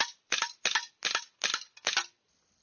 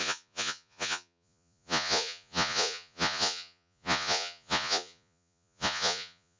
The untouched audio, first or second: first